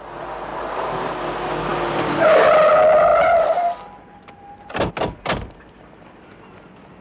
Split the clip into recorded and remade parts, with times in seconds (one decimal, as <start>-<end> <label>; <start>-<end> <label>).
0.0-0.5 recorded; 0.5-1.1 remade; 1.1-1.7 recorded; 1.7-2.5 remade; 2.5-7.0 recorded